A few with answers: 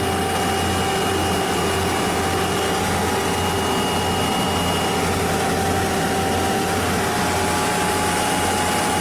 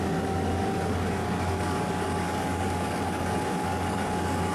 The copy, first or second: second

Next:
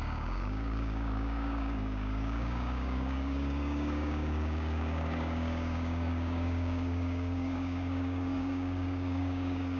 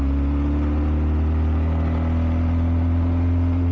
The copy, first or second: first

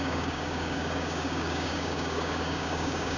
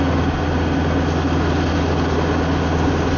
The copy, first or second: first